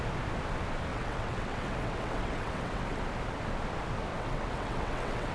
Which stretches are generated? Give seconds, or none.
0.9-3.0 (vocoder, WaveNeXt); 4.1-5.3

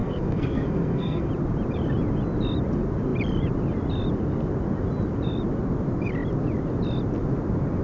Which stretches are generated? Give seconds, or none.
0.0-1.3 (codec, SNAC)

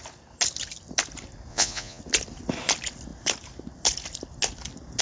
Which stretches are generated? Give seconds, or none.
1.5-2.0 (vocoder, Vocos)

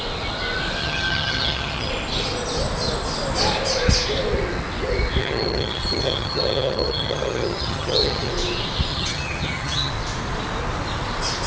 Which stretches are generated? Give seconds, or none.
0.8-1.9 (vocoder, HiFi-GAN); 5.2-8.3; 8.9-9.9